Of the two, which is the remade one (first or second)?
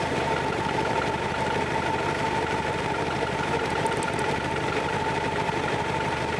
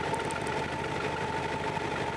first